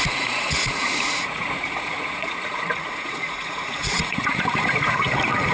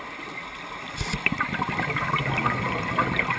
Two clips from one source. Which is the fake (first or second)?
first